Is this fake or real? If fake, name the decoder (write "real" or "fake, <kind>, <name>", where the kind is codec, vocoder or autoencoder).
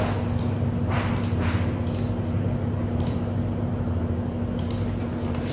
real